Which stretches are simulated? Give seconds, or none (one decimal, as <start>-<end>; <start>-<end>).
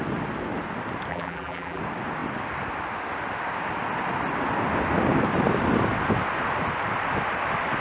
1.1-1.8